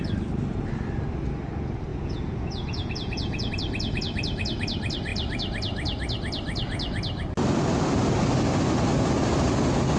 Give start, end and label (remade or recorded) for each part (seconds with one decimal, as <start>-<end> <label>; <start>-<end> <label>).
0.0-1.9 recorded; 1.9-3.5 remade; 3.5-10.0 recorded